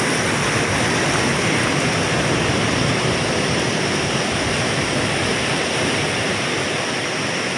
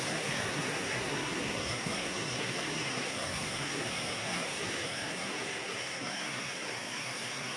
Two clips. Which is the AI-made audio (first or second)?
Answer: second